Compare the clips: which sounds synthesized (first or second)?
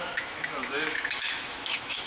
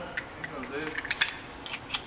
first